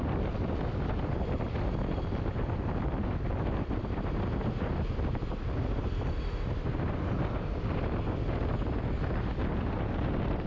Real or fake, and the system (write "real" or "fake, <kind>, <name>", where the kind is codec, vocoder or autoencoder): real